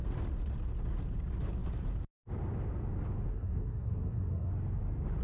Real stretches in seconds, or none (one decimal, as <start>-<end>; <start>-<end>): 0.0-3.3; 4.5-5.2